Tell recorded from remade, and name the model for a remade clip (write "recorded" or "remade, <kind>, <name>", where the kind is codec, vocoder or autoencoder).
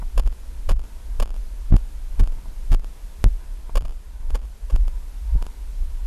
recorded